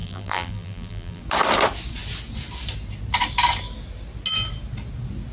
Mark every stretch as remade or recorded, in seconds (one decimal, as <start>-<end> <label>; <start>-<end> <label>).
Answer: 0.0-1.2 remade; 1.2-5.3 recorded